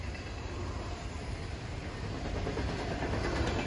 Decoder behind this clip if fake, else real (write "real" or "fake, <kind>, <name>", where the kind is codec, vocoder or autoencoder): real